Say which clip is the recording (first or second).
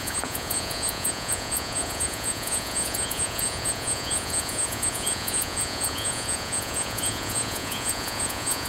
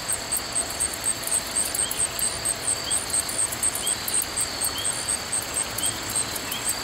second